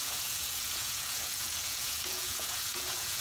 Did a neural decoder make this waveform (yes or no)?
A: yes